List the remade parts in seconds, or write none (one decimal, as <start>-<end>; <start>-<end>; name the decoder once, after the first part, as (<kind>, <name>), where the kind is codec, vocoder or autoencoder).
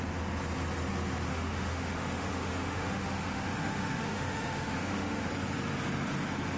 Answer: 1.3-5.3 (autoencoder, DAC-VAE)